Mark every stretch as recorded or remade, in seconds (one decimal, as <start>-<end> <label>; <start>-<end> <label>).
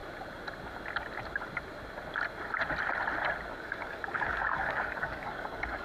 0.0-3.5 recorded; 3.5-5.8 remade